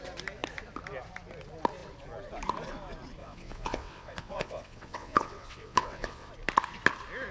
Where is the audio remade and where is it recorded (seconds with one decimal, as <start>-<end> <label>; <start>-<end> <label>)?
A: 0.0-3.2 recorded; 3.2-6.3 remade; 6.3-7.3 recorded